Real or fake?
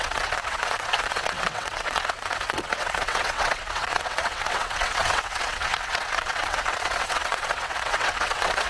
fake